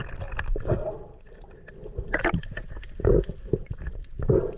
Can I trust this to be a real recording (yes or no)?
yes